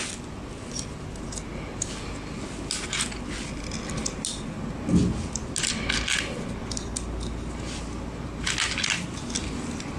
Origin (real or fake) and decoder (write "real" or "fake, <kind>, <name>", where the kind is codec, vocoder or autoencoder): real